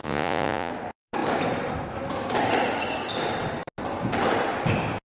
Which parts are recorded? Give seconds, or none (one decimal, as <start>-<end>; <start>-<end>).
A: 0.7-5.1